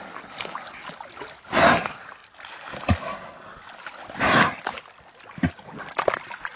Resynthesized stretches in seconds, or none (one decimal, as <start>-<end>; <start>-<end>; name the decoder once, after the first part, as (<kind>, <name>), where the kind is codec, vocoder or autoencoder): none